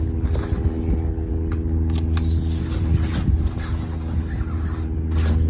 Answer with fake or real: real